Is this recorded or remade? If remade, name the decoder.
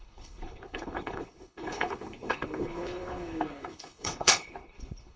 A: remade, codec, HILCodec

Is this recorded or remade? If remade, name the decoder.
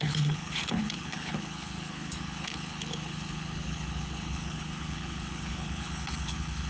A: remade, codec, HILCodec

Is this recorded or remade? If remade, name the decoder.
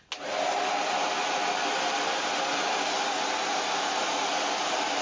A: recorded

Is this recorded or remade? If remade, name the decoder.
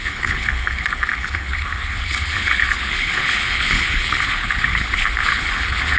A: remade, codec, HILCodec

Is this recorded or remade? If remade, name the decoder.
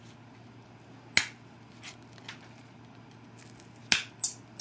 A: recorded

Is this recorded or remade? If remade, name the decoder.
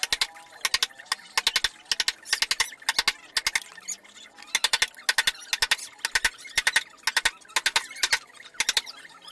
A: recorded